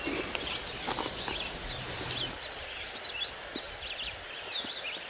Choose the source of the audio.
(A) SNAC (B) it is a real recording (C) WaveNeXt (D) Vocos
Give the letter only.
B